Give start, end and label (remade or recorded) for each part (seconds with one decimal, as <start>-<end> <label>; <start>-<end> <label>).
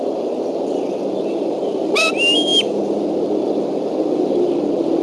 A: 0.0-2.5 recorded; 2.5-3.1 remade; 3.1-5.0 recorded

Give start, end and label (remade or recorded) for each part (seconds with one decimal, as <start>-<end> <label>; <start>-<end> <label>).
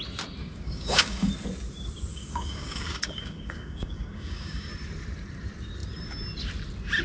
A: 0.0-0.4 recorded; 0.4-1.3 remade; 1.3-2.1 recorded; 2.1-4.7 remade; 4.7-7.0 recorded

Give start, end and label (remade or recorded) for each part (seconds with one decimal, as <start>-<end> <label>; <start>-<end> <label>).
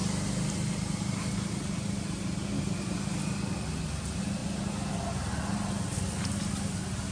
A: 0.0-7.1 recorded